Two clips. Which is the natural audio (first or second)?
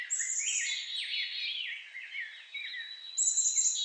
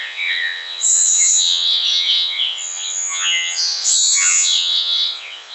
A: first